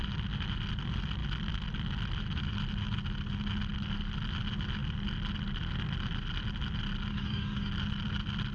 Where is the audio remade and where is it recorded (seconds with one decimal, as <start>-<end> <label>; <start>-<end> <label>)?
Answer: 0.0-7.1 recorded; 7.1-7.7 remade; 7.7-8.5 recorded